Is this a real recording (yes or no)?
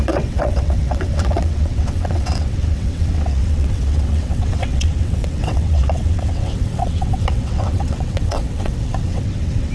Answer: no